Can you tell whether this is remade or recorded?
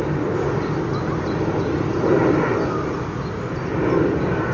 recorded